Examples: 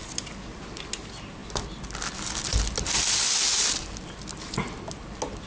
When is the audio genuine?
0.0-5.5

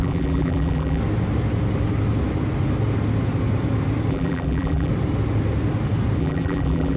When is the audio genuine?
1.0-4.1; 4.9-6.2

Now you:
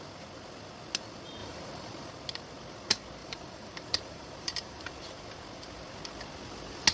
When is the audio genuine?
0.0-1.4; 2.1-3.2; 4.9-6.9

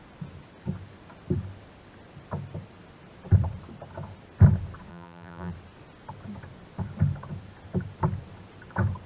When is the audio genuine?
0.0-4.9; 5.5-9.1

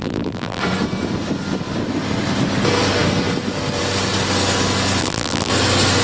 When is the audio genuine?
0.6-5.0; 5.5-6.0

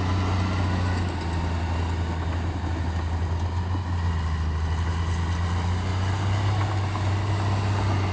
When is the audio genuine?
0.0-8.1

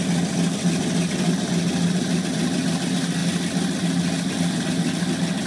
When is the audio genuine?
0.0-5.5

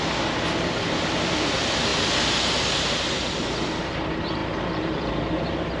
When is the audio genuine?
0.0-4.4; 5.1-5.8